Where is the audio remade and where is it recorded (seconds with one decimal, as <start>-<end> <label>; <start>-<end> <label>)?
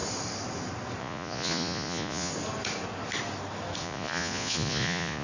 0.0-1.0 recorded; 1.0-2.3 remade; 2.3-3.8 recorded; 3.8-5.2 remade